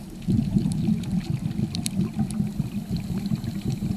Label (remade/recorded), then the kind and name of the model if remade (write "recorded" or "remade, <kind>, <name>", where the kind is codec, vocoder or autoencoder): recorded